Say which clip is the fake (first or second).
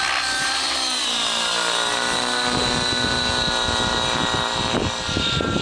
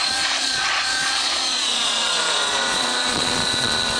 second